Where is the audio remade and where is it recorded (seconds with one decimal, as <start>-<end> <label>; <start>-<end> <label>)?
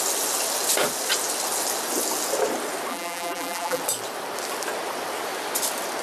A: 0.0-2.9 recorded; 2.9-3.8 remade; 3.8-6.0 recorded